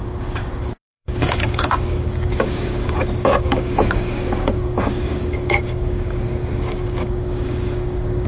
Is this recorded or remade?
remade